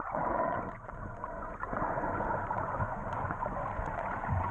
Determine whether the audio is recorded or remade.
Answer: remade